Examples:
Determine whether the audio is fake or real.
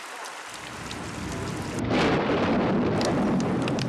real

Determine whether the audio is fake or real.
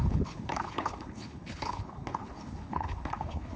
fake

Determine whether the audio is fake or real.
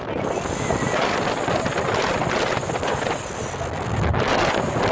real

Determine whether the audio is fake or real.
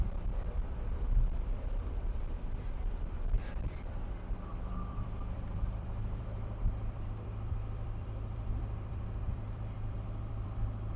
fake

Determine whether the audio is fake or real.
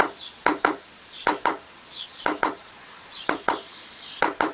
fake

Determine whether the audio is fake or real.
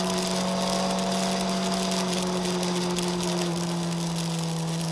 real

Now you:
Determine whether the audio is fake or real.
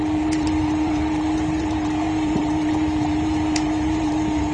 fake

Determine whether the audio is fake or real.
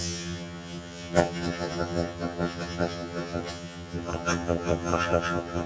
fake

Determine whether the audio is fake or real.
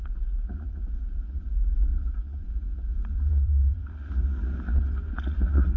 fake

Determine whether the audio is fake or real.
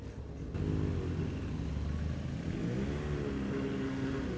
real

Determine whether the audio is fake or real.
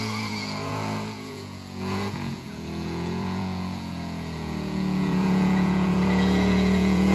fake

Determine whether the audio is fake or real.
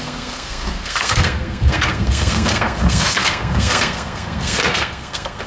fake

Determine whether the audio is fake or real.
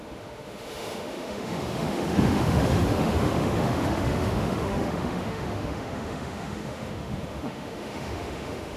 fake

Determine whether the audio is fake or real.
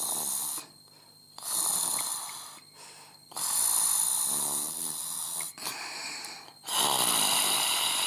real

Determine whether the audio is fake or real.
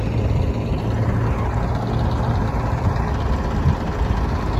real